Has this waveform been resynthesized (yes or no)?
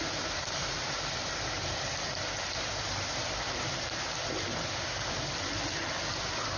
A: yes